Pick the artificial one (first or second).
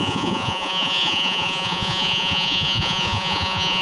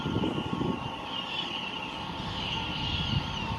first